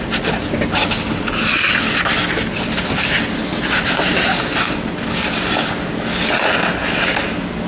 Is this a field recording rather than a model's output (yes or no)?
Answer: yes